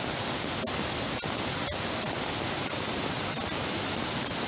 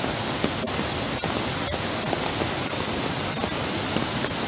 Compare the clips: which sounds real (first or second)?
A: second